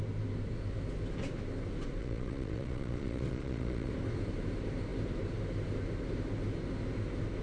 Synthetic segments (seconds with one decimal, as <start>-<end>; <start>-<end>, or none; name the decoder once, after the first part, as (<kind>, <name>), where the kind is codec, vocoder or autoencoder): 2.0-3.9 (vocoder, Vocos)